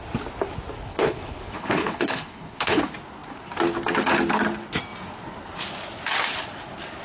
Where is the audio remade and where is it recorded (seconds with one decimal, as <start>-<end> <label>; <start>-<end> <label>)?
0.0-0.9 recorded; 0.9-2.8 remade; 2.8-7.0 recorded